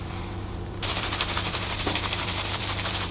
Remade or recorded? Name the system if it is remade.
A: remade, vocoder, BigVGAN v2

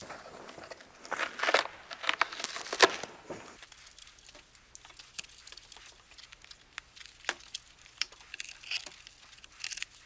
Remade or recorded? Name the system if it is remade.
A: recorded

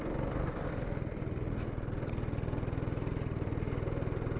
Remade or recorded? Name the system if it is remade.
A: recorded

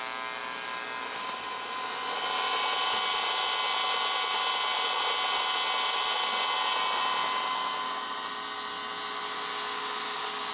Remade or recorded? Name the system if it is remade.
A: recorded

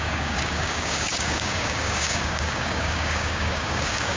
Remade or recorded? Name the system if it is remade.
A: remade, codec, DAC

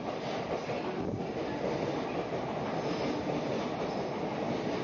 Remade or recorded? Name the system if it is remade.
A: recorded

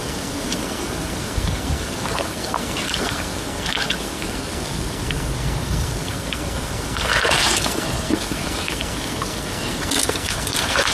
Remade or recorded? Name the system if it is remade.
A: remade, codec, SNAC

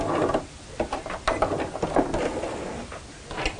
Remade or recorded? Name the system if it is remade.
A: recorded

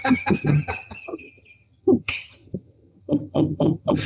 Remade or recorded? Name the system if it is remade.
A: remade, vocoder, HiFi-GAN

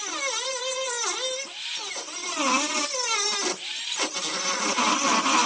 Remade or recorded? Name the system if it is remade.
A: recorded